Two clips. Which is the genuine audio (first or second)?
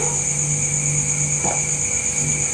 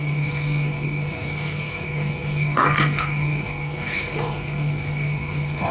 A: first